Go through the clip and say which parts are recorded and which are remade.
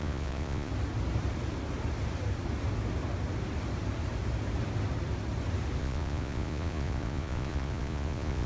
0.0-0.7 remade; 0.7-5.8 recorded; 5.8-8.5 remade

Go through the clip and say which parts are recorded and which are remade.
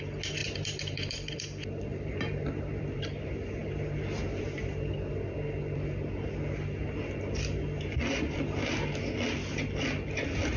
0.0-0.4 recorded; 0.4-1.4 remade; 1.4-1.9 recorded; 1.9-3.2 remade; 3.2-10.6 recorded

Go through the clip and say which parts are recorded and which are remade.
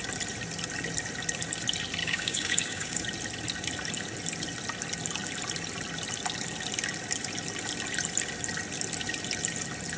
0.0-2.0 recorded; 2.0-3.0 remade; 3.0-10.0 recorded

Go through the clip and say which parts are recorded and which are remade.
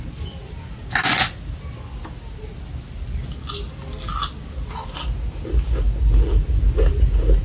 0.0-7.4 recorded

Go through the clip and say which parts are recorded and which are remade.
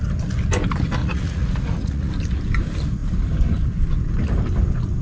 0.0-1.0 recorded; 1.0-2.1 remade; 2.1-5.0 recorded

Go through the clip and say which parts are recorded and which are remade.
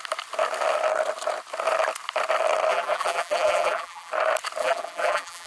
0.0-2.7 recorded; 2.7-4.1 remade; 4.1-4.6 recorded; 4.6-5.5 remade